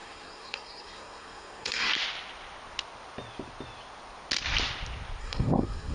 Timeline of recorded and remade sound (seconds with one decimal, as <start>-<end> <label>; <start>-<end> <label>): 0.0-1.9 remade; 1.9-5.2 recorded; 5.2-5.9 remade

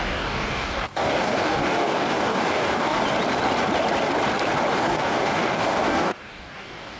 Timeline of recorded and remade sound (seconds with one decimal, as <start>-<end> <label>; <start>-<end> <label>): 0.0-3.0 remade; 3.0-4.7 recorded; 4.7-7.0 remade

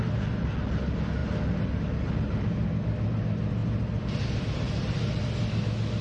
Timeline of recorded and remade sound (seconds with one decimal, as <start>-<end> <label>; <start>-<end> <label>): 0.0-6.0 recorded

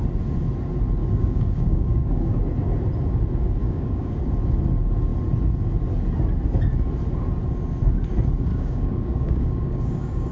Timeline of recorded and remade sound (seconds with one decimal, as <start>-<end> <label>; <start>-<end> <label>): 0.0-1.0 recorded; 1.0-2.4 remade; 2.4-3.6 recorded; 3.6-4.2 remade; 4.2-8.5 recorded; 8.5-10.3 remade

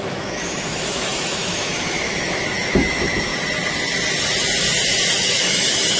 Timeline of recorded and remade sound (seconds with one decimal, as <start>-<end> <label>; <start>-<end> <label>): 0.0-3.3 remade; 3.3-5.1 recorded; 5.1-6.0 remade